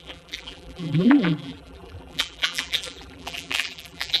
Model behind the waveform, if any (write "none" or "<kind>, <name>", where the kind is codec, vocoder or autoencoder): vocoder, BigVGAN v2